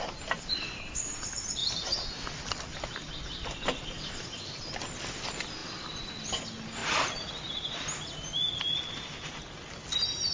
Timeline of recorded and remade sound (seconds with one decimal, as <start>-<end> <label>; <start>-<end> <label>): 0.0-1.6 recorded; 1.6-2.1 remade; 2.1-3.8 recorded; 3.8-4.6 remade; 4.6-5.6 recorded; 5.6-6.1 remade; 6.1-6.8 recorded; 6.8-7.3 remade; 7.3-10.3 recorded